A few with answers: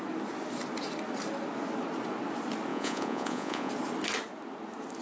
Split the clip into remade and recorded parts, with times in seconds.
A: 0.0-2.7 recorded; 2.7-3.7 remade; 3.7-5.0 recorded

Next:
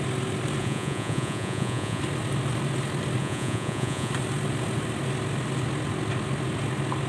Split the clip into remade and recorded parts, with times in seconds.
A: 0.0-0.6 recorded; 0.6-2.0 remade; 2.0-3.2 recorded; 3.2-4.1 remade; 4.1-7.1 recorded

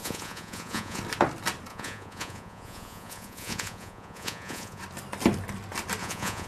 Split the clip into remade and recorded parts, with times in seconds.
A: 0.0-1.0 remade; 1.0-1.7 recorded; 1.7-4.8 remade; 4.8-6.0 recorded; 6.0-6.5 remade

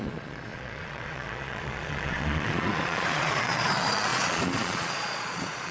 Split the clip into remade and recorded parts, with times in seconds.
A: 0.0-5.7 remade

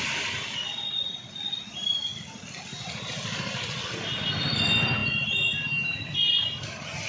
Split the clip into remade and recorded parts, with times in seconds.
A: 0.0-7.1 recorded